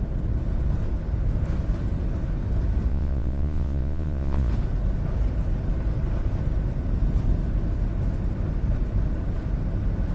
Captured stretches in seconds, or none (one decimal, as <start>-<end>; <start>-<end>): 0.0-2.9; 4.5-10.1